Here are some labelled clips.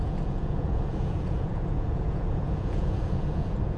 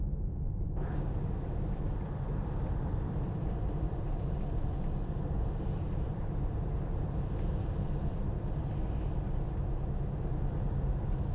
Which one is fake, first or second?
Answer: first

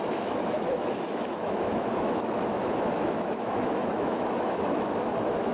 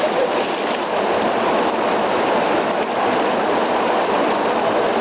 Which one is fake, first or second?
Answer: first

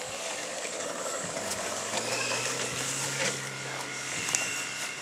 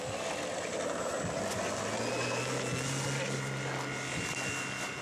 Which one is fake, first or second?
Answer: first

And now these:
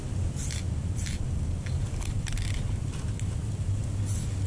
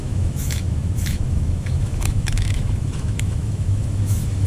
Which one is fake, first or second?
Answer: second